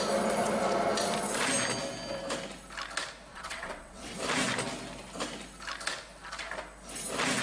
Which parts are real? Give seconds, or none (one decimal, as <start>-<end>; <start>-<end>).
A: 0.0-3.3; 4.2-7.4